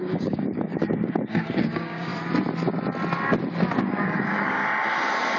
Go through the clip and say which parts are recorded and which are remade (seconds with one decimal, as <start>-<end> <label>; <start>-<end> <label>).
0.0-2.1 remade; 2.1-3.8 recorded; 3.8-4.6 remade; 4.6-5.4 recorded